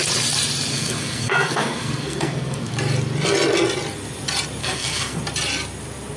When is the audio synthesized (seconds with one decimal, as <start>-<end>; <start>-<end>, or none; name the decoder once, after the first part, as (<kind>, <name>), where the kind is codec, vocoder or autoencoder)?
0.7-2.7 (codec, SNAC); 4.6-5.2